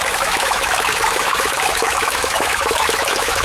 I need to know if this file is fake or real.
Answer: fake